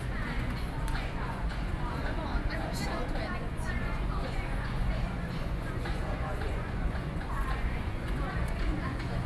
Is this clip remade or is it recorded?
remade